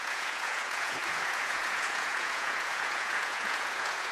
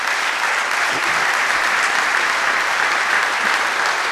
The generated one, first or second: first